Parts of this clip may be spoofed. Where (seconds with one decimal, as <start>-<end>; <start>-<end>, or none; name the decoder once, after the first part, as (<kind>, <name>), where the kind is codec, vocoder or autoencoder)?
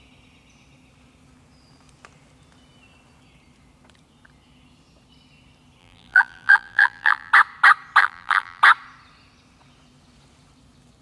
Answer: 5.8-7.3 (vocoder, BigVGAN v2); 8.0-8.6